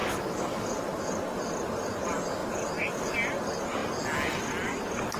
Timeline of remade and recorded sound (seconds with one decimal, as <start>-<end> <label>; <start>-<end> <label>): 0.0-1.0 remade; 1.0-2.4 recorded; 2.4-3.1 remade; 3.1-5.2 recorded